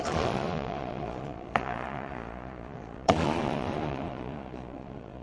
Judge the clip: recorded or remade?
remade